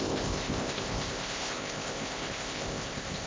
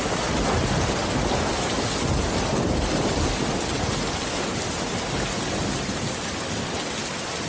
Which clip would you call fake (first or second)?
first